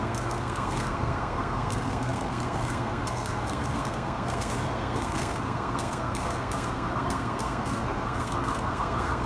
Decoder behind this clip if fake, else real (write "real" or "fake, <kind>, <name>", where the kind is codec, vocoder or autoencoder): fake, codec, SNAC